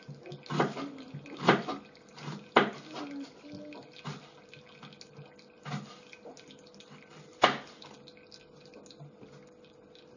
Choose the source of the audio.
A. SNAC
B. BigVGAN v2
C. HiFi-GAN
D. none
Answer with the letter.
D